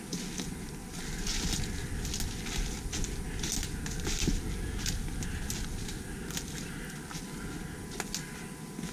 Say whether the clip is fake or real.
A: real